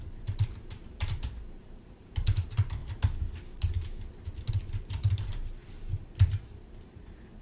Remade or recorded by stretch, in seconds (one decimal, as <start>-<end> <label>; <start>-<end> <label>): 0.0-2.8 remade; 2.8-4.5 recorded; 4.5-5.6 remade; 5.6-6.3 recorded; 6.3-7.4 remade